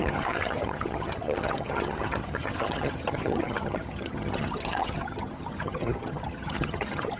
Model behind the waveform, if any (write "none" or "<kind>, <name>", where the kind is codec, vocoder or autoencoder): vocoder, HiFi-GAN